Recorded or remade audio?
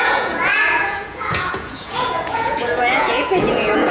remade